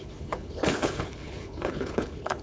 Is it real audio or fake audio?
fake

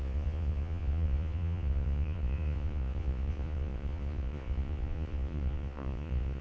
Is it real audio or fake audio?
fake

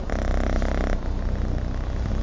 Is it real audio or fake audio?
real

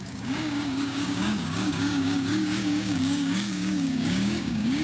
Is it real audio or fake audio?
fake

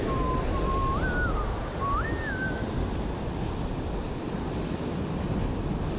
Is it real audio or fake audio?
real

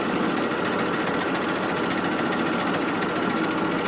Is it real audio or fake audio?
real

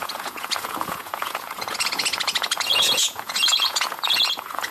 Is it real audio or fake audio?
fake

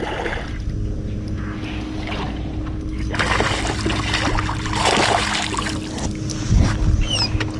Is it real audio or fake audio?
real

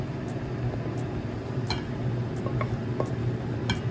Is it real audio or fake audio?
real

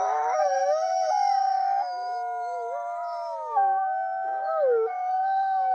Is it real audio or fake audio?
fake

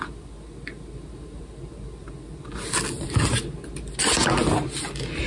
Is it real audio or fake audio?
real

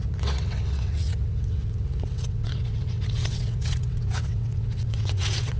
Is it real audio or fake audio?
fake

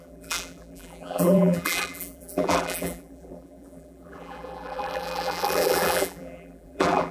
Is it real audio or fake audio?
fake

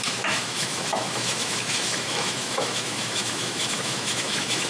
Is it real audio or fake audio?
fake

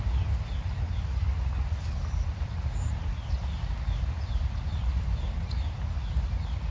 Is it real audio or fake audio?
real